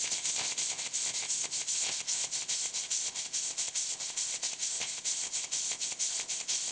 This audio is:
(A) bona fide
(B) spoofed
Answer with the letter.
B